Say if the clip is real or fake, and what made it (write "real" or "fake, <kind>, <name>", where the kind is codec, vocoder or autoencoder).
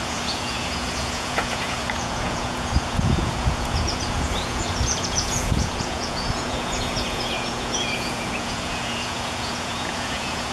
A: fake, vocoder, Vocos